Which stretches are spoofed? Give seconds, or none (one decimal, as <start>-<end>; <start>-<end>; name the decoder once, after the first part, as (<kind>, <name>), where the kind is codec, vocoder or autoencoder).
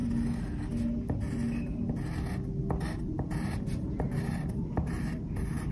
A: 3.0-5.7 (vocoder, BigVGAN v2)